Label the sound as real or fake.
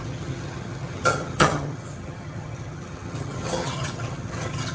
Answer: fake